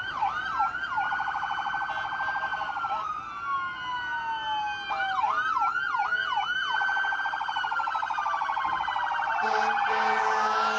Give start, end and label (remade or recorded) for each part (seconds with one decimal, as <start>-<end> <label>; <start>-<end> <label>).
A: 0.0-10.8 recorded